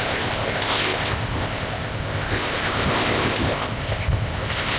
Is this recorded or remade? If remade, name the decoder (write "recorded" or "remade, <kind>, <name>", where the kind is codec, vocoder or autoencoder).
remade, codec, ZipCodec